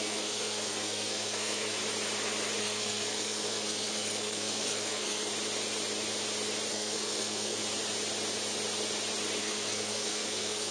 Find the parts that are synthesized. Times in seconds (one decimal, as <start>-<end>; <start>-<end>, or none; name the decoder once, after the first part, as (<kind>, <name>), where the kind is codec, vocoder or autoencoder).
0.0-1.8 (codec, SNAC); 2.6-5.3; 6.7-7.6; 9.4-10.7

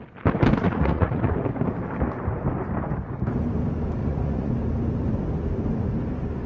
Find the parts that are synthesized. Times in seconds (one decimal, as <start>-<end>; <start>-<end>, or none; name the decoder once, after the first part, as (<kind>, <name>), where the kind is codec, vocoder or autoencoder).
0.6-1.3 (vocoder, Vocos); 4.0-4.5

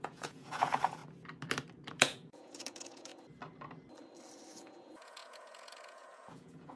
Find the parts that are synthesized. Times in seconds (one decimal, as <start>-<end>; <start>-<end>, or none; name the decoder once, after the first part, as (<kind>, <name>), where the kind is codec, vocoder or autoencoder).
0.0-1.0 (vocoder, Vocos); 1.9-3.1; 4.5-6.8

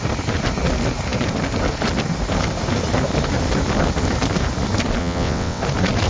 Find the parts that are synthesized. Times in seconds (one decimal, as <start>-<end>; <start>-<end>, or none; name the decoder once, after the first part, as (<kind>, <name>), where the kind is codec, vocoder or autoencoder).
5.0-5.6 (vocoder, WaveNeXt)

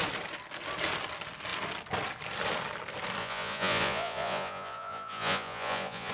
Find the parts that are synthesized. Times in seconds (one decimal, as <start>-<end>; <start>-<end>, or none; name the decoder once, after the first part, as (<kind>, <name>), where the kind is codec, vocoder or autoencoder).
3.2-6.1 (vocoder, Vocos)